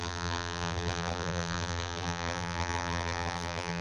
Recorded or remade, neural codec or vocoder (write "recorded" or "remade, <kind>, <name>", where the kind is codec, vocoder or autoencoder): remade, vocoder, BigVGAN v2